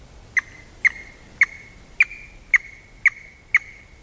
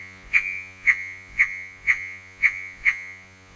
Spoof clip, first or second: second